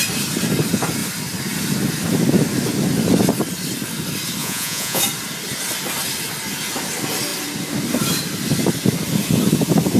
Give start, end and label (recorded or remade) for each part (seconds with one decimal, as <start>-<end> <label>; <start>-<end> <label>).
0.0-4.4 recorded; 4.4-5.0 remade; 5.0-10.0 recorded